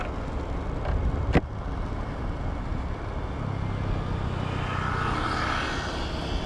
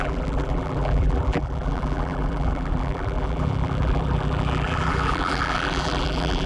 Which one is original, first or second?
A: first